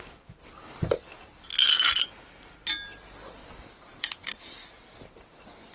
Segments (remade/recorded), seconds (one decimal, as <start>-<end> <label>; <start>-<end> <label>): 0.0-3.9 recorded; 3.9-4.4 remade; 4.4-5.7 recorded